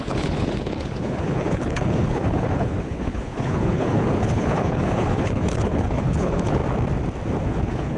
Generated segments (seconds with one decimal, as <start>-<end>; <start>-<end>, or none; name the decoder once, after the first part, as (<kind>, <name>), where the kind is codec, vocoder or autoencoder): 0.0-6.6 (codec, HILCodec); 7.4-8.0